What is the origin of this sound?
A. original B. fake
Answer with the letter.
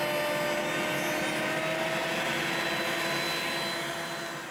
A